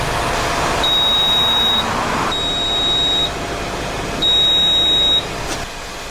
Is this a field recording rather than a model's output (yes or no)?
yes